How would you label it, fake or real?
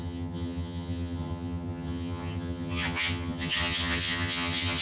fake